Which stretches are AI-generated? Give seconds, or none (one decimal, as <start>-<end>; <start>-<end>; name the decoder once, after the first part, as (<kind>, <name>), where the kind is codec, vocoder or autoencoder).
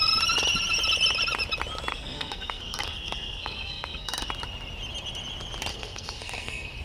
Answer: 1.9-4.3 (codec, SNAC); 5.7-6.8